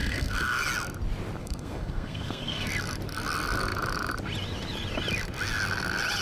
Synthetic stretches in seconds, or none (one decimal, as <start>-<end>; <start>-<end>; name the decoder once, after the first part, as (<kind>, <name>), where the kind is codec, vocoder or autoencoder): 0.0-0.6 (codec, SNAC); 1.4-2.7